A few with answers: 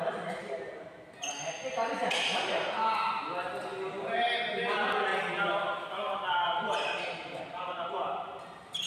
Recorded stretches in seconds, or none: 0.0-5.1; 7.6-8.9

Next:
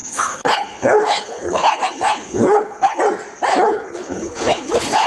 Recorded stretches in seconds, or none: 3.0-3.5